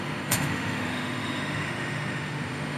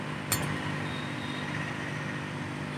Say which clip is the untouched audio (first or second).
second